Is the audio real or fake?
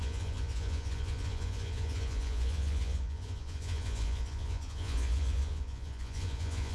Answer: fake